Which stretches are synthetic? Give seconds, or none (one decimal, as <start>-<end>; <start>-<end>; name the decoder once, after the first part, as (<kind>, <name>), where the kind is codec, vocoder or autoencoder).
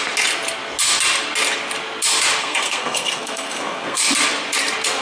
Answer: 2.4-4.0 (codec, SNAC)